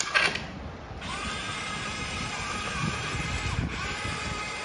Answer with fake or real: real